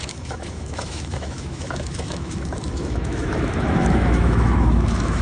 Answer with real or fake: fake